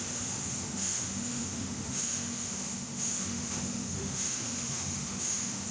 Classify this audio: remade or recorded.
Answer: remade